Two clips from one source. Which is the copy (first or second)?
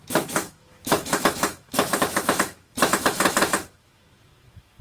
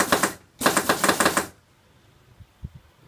first